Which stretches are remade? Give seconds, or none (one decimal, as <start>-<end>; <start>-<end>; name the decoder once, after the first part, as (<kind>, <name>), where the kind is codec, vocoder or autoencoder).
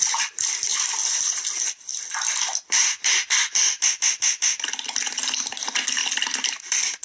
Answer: 0.7-1.4 (vocoder, BigVGAN v2); 6.0-6.5